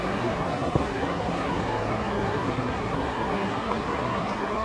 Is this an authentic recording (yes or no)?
no